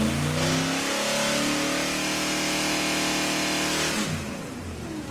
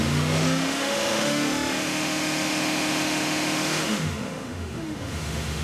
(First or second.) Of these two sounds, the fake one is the second